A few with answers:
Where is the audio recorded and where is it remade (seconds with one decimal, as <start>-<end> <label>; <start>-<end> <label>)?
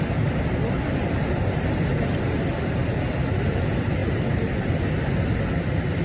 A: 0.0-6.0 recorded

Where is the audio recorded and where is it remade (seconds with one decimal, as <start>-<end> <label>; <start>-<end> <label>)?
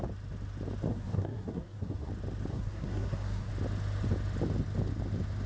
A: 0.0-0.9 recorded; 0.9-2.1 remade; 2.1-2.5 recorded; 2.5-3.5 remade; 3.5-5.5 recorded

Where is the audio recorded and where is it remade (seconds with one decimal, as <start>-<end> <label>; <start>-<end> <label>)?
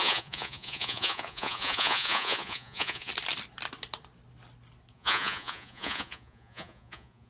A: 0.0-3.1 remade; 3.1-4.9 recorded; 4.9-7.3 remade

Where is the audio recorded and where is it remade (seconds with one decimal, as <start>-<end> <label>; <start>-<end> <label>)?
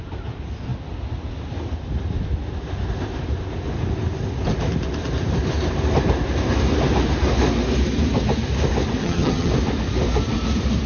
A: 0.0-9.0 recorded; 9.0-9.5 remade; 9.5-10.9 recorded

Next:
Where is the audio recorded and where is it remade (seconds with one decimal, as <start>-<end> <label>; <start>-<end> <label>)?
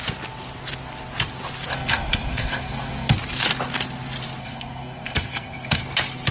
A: 0.0-1.7 recorded; 1.7-3.1 remade; 3.1-4.4 recorded; 4.4-5.8 remade; 5.8-6.3 recorded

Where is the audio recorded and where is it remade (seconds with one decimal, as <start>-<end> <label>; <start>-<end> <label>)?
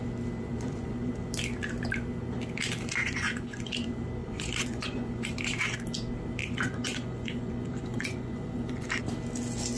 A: 0.0-0.5 recorded; 0.5-1.1 remade; 1.1-3.0 recorded; 3.0-3.7 remade; 3.7-4.2 recorded; 4.2-5.3 remade; 5.3-6.4 recorded; 6.4-8.9 remade; 8.9-9.8 recorded